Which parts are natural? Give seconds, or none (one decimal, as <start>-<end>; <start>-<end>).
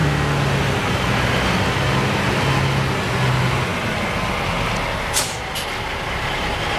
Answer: 0.0-6.8